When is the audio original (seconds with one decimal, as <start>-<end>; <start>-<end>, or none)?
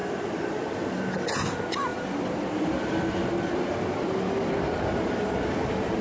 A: 1.0-1.9; 5.3-6.0